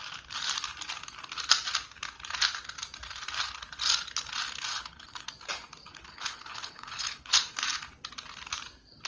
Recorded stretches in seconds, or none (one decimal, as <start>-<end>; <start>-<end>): 0.0-4.7; 5.3-5.9; 7.5-9.1